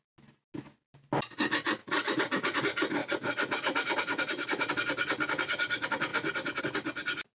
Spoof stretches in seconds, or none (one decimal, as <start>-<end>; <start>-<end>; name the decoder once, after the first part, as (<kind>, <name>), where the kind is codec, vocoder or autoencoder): 1.8-2.6 (vocoder, Vocos); 3.0-4.7